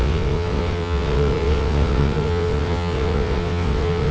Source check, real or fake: fake